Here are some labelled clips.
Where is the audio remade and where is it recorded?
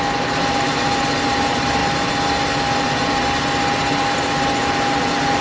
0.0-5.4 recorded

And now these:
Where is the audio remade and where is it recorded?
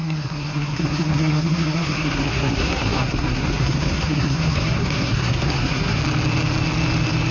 0.0-6.0 remade; 6.0-7.3 recorded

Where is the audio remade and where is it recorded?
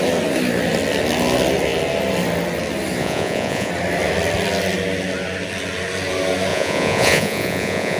0.0-3.0 recorded; 3.0-3.7 remade; 3.7-6.5 recorded; 6.5-8.0 remade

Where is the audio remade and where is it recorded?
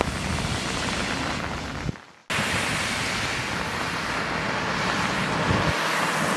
0.0-6.4 recorded